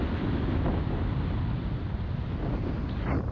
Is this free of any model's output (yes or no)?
yes